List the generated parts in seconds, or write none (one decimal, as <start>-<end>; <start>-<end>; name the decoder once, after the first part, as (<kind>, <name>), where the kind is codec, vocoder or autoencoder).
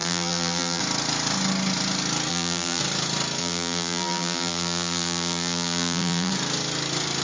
0.0-0.8 (vocoder, BigVGAN v2); 2.3-2.8; 3.4-6.3